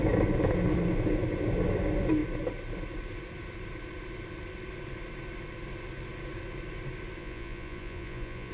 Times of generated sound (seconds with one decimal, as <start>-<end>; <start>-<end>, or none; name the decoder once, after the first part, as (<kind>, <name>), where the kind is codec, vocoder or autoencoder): 7.2-8.5 (vocoder, Vocos)